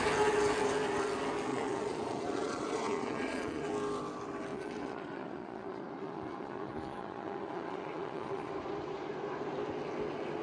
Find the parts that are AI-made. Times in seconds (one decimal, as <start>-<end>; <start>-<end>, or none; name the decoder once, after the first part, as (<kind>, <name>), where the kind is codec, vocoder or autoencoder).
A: 1.5-3.7 (vocoder, Vocos); 4.5-8.5